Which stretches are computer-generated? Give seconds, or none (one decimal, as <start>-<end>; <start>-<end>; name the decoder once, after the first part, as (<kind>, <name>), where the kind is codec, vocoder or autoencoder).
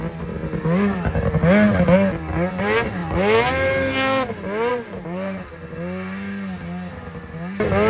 4.7-5.7 (vocoder, BigVGAN v2)